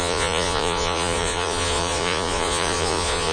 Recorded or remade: remade